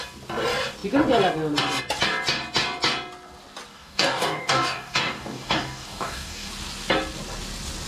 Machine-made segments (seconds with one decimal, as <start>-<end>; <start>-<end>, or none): 3.7-6.5